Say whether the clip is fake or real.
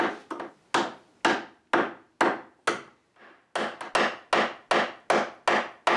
real